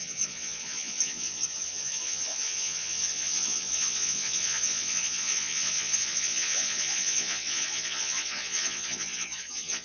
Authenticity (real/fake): fake